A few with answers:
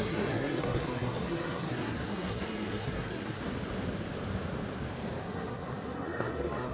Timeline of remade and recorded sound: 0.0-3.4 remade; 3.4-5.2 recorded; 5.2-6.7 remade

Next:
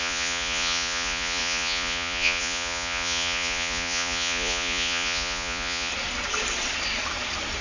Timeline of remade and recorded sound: 0.0-5.9 remade; 5.9-7.6 recorded